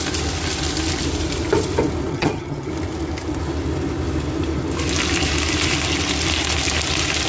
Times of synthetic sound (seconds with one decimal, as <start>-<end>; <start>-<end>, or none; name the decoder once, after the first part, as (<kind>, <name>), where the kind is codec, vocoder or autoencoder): 2.1-2.7 (vocoder, HiFi-GAN)